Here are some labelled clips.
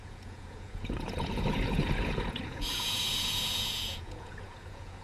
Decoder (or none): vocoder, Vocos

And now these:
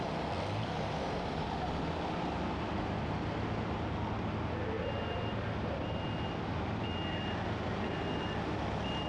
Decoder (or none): none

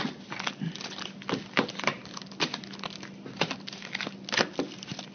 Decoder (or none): none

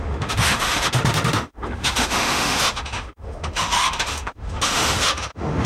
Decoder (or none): autoencoder, DAC-VAE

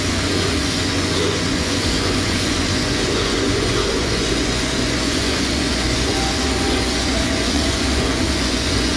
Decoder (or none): vocoder, Vocos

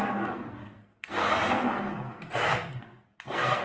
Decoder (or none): codec, SNAC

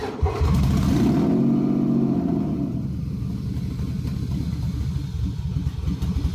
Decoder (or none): none